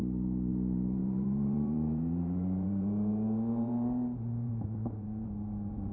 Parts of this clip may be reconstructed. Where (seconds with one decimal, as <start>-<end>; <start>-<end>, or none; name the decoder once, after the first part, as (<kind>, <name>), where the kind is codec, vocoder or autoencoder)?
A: 0.5-5.9 (vocoder, BigVGAN v2)